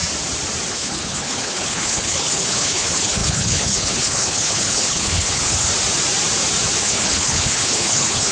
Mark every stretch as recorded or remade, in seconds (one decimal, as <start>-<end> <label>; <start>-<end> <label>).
0.0-0.7 recorded; 0.7-5.7 remade; 5.7-6.8 recorded; 6.8-8.3 remade